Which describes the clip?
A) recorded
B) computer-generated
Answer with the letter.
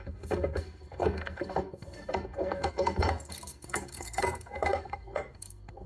B